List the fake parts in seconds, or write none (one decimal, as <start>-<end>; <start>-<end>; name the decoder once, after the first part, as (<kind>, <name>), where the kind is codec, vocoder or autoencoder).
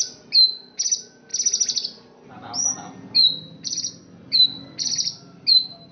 none